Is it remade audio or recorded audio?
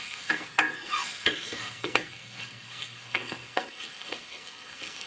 remade